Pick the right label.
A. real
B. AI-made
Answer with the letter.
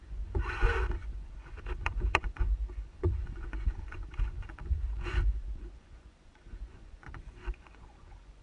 B